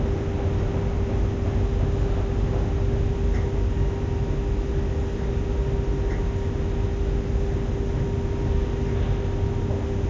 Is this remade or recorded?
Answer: recorded